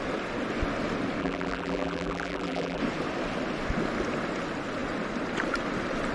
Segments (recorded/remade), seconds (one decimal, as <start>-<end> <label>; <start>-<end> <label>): 0.0-1.2 recorded; 1.2-2.8 remade; 2.8-6.1 recorded